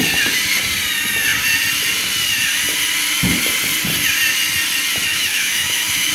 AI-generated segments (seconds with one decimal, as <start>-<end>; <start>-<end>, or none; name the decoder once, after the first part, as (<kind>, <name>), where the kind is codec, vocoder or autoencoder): 5.1-6.1 (autoencoder, DAC-VAE)